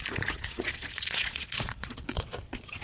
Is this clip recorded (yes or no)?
no